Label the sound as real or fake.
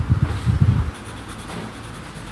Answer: real